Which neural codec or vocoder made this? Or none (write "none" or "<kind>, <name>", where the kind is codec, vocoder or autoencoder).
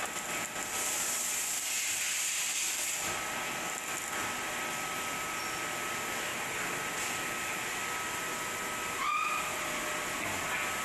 none